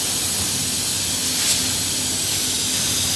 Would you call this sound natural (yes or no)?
yes